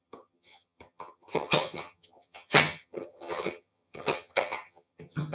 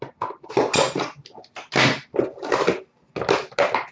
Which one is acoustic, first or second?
second